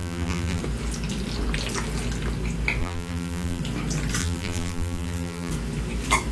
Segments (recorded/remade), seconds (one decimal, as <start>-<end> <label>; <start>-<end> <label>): 0.0-0.6 remade; 0.6-2.8 recorded; 2.8-3.6 remade; 3.6-4.2 recorded; 4.2-5.5 remade; 5.5-6.3 recorded